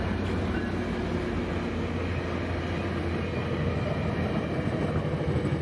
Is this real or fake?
real